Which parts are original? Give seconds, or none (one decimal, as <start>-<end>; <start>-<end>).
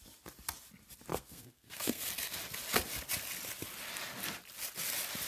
0.0-1.1; 2.1-5.3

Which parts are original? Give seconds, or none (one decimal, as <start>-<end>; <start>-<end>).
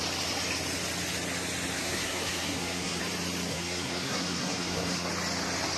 0.0-1.8; 3.0-3.5; 5.1-5.8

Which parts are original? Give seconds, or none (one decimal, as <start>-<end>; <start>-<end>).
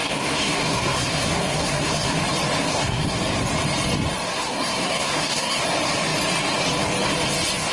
2.2-2.6; 3.2-4.3; 5.6-7.7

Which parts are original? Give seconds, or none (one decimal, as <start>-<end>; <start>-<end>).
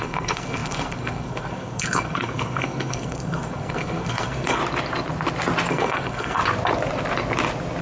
4.6-5.7; 6.4-7.8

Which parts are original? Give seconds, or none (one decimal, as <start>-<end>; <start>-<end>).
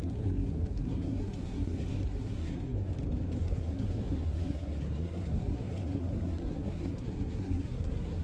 2.9-3.4